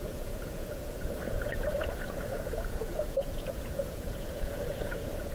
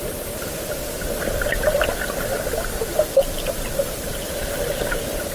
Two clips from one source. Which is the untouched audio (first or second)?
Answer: second